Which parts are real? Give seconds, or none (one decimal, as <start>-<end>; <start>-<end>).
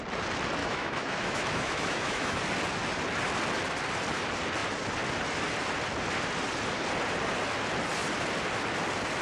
0.0-0.6; 2.4-9.2